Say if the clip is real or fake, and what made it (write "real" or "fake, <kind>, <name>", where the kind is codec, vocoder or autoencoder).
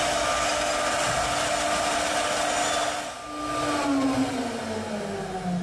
real